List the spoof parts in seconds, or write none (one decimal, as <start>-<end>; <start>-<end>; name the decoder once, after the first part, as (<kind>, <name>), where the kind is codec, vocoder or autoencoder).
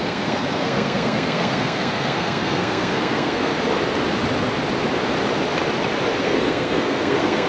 0.0-3.5 (codec, SNAC); 6.2-7.5